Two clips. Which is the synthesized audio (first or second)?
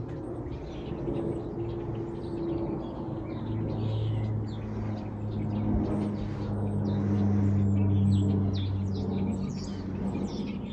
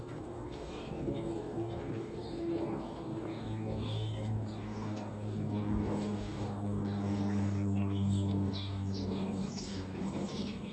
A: second